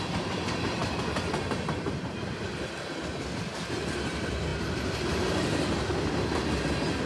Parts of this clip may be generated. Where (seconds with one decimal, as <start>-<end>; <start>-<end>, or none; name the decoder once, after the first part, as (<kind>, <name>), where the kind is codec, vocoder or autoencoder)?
none